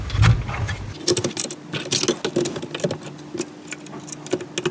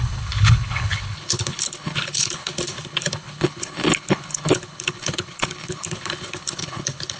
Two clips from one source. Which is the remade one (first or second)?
second